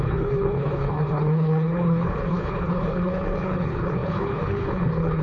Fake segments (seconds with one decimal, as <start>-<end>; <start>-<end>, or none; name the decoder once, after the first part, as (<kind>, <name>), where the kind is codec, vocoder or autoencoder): 0.0-5.2 (codec, HILCodec)